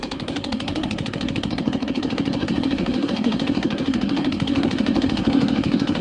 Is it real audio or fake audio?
fake